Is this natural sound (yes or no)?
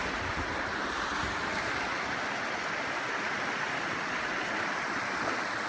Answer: yes